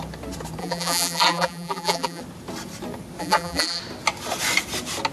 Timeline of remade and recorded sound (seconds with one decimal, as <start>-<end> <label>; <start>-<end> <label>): 0.0-0.6 recorded; 0.6-2.2 remade; 2.2-3.2 recorded; 3.2-3.8 remade; 3.8-5.1 recorded